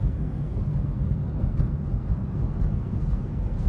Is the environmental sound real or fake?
fake